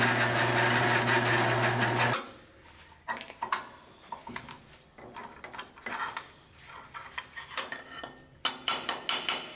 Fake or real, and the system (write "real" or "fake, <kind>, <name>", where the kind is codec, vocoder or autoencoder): real